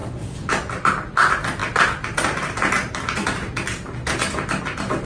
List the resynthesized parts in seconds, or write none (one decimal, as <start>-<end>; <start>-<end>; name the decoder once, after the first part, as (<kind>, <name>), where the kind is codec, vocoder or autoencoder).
none